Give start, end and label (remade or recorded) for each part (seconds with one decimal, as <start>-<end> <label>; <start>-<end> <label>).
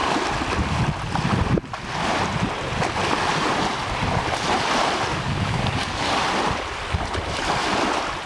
0.0-5.1 recorded; 5.1-6.2 remade; 6.2-8.3 recorded